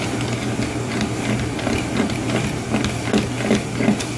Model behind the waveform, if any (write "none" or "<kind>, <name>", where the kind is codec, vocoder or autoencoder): none